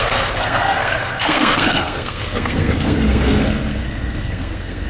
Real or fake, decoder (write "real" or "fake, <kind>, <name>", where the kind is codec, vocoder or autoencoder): fake, codec, SNAC